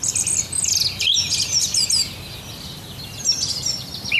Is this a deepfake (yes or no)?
no